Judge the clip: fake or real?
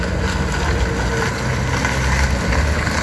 real